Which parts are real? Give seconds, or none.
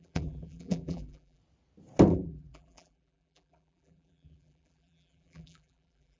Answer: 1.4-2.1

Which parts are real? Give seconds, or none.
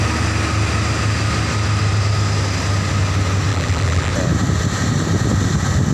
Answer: 0.0-3.5; 4.1-5.9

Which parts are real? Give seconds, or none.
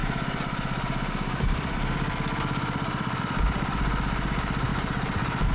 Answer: 4.7-5.5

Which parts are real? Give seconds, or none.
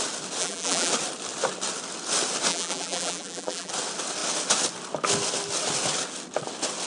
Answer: 0.0-0.4; 0.9-2.5; 3.7-6.9